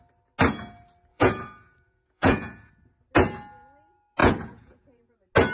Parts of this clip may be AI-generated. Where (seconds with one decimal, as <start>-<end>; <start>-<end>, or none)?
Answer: 1.1-2.7; 4.2-5.1

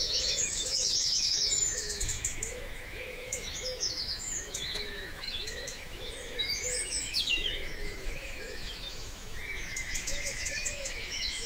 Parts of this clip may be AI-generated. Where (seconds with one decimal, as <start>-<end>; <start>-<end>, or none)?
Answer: 0.0-11.5

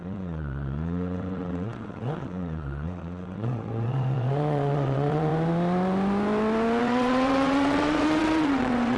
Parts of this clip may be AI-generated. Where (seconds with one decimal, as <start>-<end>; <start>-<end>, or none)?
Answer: 0.0-5.3; 6.8-9.0

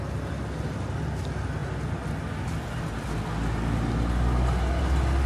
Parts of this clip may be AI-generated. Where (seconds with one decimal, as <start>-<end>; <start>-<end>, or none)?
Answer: none

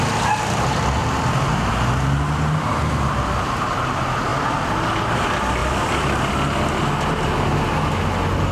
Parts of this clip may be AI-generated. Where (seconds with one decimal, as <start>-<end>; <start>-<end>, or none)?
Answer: 1.0-1.7; 5.6-6.3

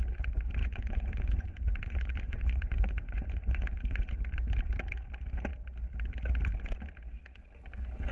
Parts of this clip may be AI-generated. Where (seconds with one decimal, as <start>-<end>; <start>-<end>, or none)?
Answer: 0.6-4.1

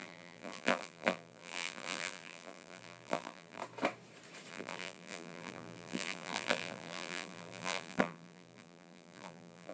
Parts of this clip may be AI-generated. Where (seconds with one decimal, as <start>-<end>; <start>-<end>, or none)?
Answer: 0.0-3.6; 4.5-9.7